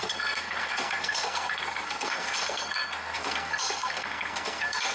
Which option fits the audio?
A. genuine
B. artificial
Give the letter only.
B